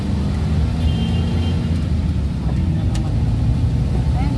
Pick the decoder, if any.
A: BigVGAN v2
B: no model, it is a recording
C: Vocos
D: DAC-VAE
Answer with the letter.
B